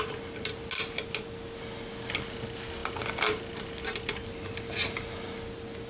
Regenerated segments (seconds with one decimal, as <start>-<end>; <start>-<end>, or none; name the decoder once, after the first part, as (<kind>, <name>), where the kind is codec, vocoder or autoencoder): none